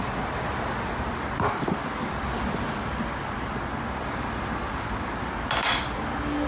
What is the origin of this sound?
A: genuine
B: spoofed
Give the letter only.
A